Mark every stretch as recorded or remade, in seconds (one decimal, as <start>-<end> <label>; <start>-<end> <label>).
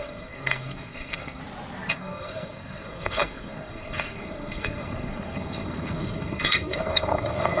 0.0-1.4 remade; 1.4-1.9 recorded; 1.9-7.6 remade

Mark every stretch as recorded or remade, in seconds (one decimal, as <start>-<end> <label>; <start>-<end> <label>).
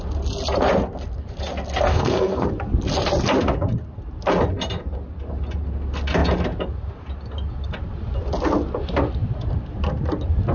0.0-1.9 recorded; 1.9-2.5 remade; 2.5-10.5 recorded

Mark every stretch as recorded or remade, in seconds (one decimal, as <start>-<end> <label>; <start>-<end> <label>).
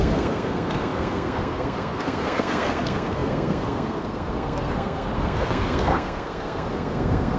0.0-7.4 remade